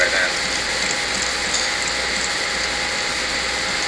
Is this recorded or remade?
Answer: recorded